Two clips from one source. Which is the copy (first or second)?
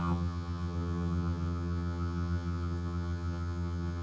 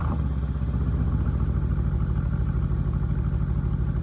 first